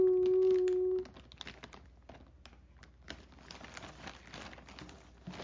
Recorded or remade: recorded